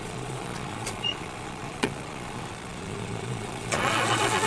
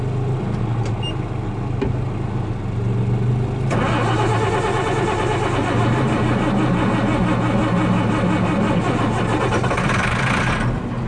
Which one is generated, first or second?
first